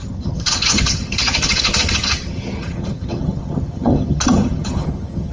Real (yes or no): no